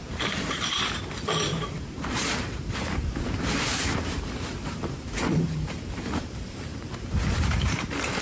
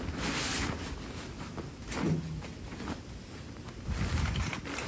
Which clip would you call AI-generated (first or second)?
first